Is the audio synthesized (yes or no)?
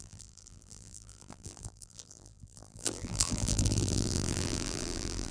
yes